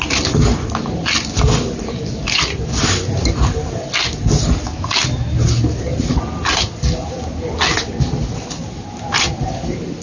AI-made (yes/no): no